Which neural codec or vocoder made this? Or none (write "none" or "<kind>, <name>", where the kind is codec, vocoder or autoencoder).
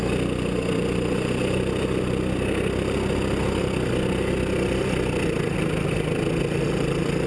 none